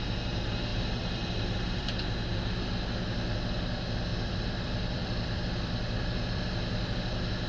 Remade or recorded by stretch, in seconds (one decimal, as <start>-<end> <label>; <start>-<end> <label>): 0.0-0.7 recorded; 0.7-1.9 remade; 1.9-4.1 recorded; 4.1-6.9 remade; 6.9-7.5 recorded